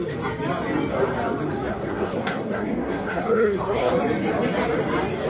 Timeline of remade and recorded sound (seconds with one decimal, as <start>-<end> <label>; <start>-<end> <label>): 0.0-1.7 recorded; 1.7-3.9 remade; 3.9-5.3 recorded

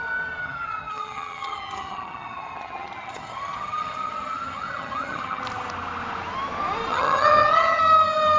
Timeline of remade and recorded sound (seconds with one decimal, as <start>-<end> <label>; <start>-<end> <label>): 0.0-0.4 recorded; 0.4-5.4 remade; 5.4-6.9 recorded; 6.9-7.8 remade; 7.8-8.4 recorded

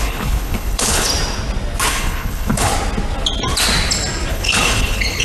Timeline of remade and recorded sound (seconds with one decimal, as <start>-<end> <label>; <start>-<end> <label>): 0.0-1.1 remade; 1.1-1.9 recorded; 1.9-2.7 remade; 2.7-4.3 recorded; 4.3-5.2 remade

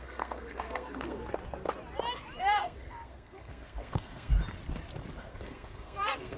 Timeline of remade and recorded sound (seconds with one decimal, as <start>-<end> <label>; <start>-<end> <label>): 0.0-1.2 remade; 1.2-2.4 recorded; 2.4-4.3 remade; 4.3-5.2 recorded; 5.2-6.4 remade

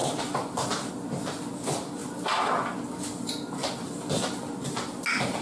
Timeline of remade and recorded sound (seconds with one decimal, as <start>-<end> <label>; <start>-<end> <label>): 0.0-0.9 remade; 0.9-3.6 recorded; 3.6-4.2 remade; 4.2-5.4 recorded

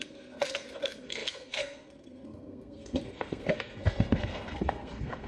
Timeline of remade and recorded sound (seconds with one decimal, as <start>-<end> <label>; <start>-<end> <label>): 0.0-5.3 remade

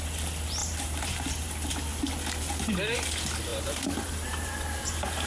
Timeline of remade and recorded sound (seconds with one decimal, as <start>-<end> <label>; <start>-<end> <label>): 0.0-0.6 recorded; 0.6-1.5 remade; 1.5-3.5 recorded; 3.5-5.3 remade